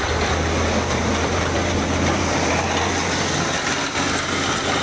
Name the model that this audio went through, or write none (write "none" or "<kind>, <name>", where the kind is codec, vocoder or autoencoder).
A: vocoder, BigVGAN v2